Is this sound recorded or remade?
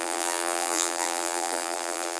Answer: remade